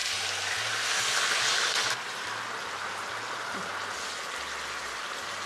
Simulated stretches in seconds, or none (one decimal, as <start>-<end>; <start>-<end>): none